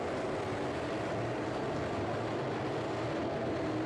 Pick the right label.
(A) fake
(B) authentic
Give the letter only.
B